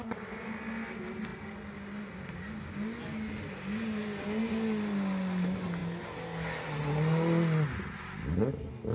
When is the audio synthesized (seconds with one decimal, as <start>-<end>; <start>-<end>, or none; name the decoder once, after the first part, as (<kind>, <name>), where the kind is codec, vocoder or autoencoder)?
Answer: none